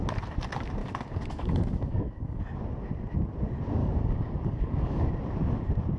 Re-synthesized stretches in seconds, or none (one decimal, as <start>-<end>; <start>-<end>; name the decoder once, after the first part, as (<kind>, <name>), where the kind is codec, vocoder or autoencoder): 0.8-2.4 (codec, DAC); 3.8-5.1